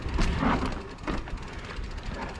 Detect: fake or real real